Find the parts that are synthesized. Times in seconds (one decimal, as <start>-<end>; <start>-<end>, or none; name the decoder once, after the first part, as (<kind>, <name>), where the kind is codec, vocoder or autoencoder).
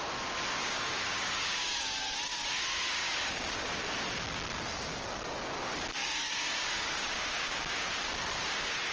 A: 0.6-2.1 (codec, DAC); 3.0-3.8; 6.0-7.9